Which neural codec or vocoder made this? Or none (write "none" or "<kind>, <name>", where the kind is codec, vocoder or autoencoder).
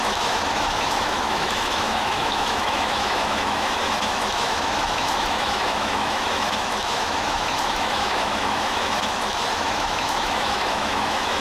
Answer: autoencoder, DAC-VAE